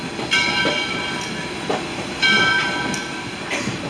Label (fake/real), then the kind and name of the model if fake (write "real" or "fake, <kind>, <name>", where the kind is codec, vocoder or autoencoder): real